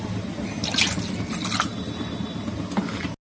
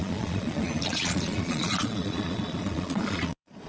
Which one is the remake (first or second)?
second